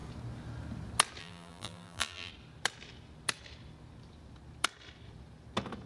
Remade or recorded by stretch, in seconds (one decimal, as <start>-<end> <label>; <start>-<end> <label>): 0.0-1.2 recorded; 1.2-2.3 remade; 2.3-5.9 recorded